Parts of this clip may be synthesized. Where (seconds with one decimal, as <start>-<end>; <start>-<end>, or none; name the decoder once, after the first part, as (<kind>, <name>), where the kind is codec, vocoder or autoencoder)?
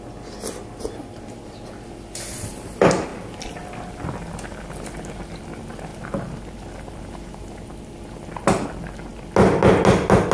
3.1-5.1 (vocoder, BigVGAN v2); 5.9-7.0